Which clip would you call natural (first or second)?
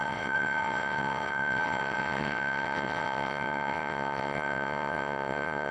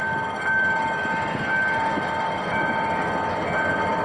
second